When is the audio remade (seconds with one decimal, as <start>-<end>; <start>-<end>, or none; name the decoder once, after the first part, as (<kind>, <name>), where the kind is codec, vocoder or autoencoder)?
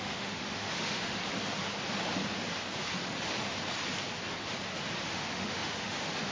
0.0-1.2 (autoencoder, DAC-VAE); 5.0-6.3